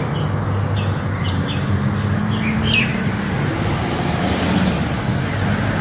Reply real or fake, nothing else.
real